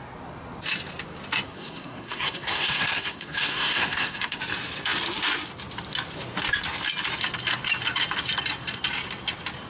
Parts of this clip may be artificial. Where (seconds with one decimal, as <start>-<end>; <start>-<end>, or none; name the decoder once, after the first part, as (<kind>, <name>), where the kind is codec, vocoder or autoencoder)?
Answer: 1.5-4.4 (codec, SNAC)